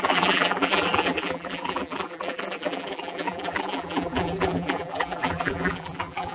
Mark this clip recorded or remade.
remade